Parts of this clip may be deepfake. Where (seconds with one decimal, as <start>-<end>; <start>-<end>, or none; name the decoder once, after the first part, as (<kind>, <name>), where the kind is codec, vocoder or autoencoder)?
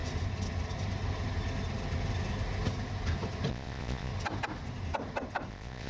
3.5-4.1 (vocoder, Vocos); 5.5-5.9